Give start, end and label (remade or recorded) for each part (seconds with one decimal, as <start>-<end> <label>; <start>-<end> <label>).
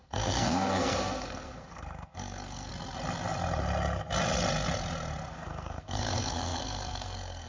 0.0-2.7 remade; 2.7-5.3 recorded; 5.3-7.5 remade